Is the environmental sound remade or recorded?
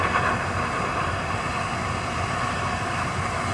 recorded